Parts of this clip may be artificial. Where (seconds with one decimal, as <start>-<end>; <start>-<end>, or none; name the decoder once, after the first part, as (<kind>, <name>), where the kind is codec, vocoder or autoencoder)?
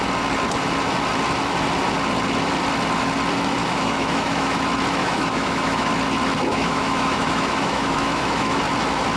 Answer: 3.6-4.6 (autoencoder, DAC-VAE); 5.0-5.9; 6.5-8.6